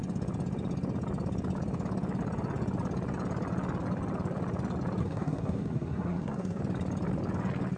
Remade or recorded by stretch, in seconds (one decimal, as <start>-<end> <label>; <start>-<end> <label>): 0.0-5.0 recorded; 5.0-6.6 remade; 6.6-7.8 recorded